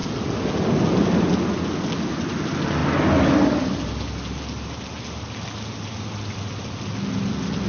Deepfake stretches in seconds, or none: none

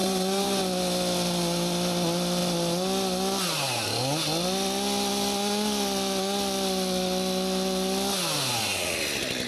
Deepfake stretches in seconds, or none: 0.0-0.6 (vocoder, BigVGAN v2)

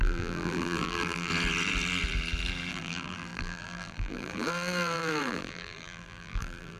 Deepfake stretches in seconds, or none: 0.0-1.3 (vocoder, BigVGAN v2); 2.7-6.8

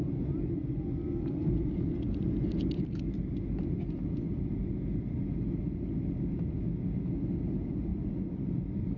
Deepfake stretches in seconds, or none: 7.9-9.0 (vocoder, BigVGAN v2)

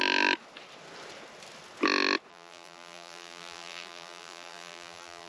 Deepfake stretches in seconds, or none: 2.3-5.3 (vocoder, BigVGAN v2)

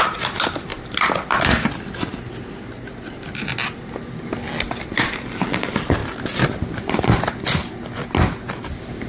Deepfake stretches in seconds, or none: 0.7-1.7 (vocoder, BigVGAN v2); 6.0-7.7

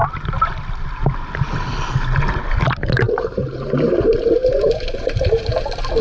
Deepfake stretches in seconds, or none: 2.3-6.0 (vocoder, BigVGAN v2)

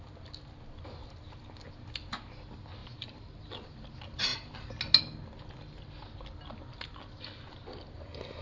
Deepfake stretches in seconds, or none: 2.8-3.4 (vocoder, BigVGAN v2)